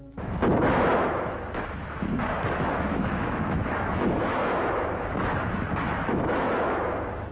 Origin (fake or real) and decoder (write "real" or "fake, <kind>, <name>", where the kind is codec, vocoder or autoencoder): fake, autoencoder, DAC-VAE